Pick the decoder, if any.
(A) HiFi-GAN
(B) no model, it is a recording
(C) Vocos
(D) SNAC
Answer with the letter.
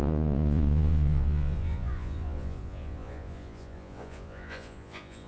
C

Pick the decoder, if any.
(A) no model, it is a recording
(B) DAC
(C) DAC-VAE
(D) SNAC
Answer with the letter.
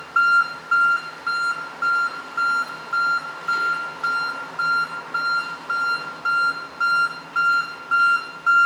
A